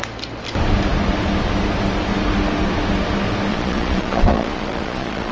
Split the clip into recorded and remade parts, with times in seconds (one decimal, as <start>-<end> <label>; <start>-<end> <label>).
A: 0.0-3.5 recorded; 3.5-5.3 remade